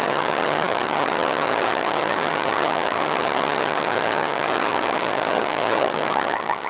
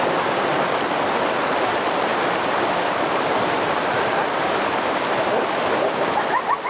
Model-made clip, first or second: first